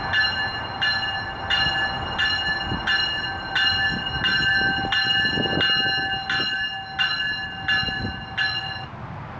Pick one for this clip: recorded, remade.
recorded